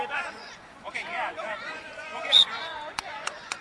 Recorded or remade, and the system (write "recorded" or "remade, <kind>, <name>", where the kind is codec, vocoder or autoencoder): remade, vocoder, Vocos